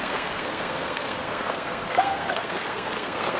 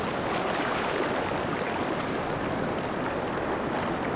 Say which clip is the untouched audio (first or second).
second